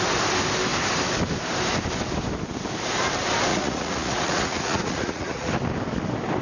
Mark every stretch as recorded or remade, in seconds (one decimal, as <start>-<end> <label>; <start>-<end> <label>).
0.0-3.5 recorded; 3.5-5.5 remade; 5.5-6.4 recorded